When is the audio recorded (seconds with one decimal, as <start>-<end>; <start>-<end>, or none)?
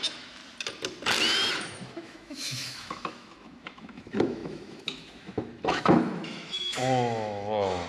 0.4-1.5